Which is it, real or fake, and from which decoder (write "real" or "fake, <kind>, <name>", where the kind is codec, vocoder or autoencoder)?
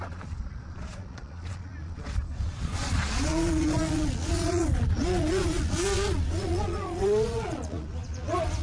fake, vocoder, Vocos